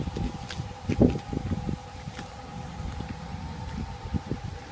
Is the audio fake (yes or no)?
no